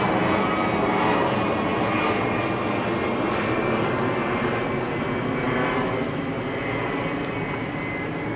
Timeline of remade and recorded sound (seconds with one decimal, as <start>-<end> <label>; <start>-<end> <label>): 0.0-8.4 recorded